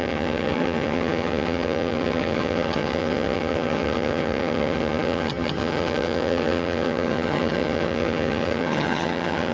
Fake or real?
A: fake